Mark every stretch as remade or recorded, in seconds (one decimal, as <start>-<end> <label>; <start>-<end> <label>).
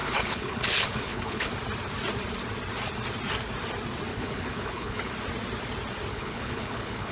0.0-1.5 remade; 1.5-4.1 recorded; 4.1-5.1 remade; 5.1-6.1 recorded; 6.1-7.1 remade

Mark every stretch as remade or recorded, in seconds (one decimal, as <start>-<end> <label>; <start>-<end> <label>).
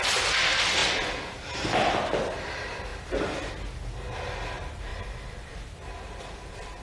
0.0-6.8 recorded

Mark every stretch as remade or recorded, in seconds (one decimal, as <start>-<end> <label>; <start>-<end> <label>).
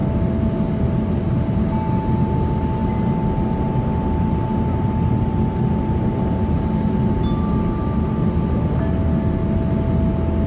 0.0-10.5 recorded